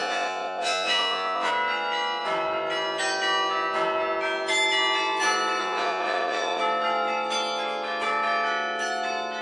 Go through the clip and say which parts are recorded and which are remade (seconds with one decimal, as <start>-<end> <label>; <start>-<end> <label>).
0.0-1.5 remade; 1.5-5.6 recorded; 5.6-6.6 remade; 6.6-9.4 recorded